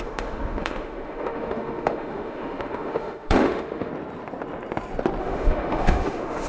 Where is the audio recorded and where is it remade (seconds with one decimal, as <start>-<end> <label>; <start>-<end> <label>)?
0.0-3.9 remade; 3.9-5.2 recorded; 5.2-6.5 remade